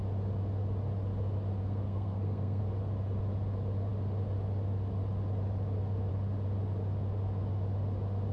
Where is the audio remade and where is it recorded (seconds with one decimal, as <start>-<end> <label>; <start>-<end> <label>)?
0.0-1.6 recorded; 1.6-2.6 remade; 2.6-8.3 recorded